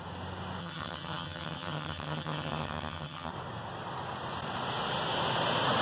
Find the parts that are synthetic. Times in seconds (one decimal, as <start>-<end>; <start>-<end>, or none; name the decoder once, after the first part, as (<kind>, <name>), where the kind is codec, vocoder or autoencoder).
0.6-3.3 (vocoder, HiFi-GAN)